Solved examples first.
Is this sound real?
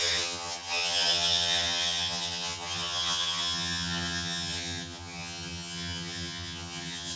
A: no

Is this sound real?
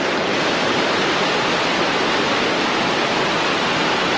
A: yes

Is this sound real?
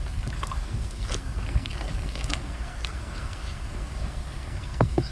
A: no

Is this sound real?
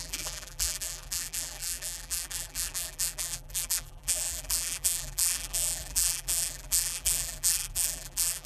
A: no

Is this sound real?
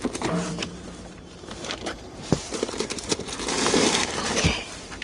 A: no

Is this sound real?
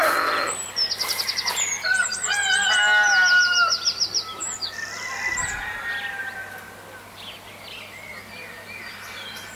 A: yes